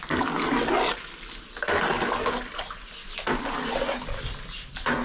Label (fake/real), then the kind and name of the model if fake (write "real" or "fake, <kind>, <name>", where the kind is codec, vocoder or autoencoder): real